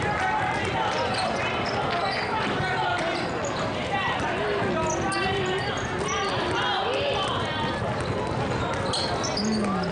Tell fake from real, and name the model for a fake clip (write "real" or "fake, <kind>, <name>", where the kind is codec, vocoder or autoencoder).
real